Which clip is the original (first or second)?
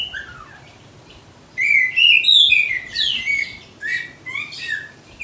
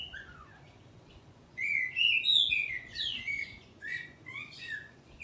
first